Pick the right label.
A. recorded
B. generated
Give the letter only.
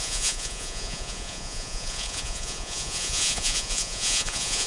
B